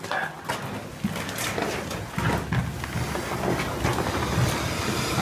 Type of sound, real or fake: real